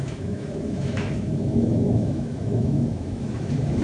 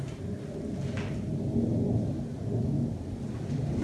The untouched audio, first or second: second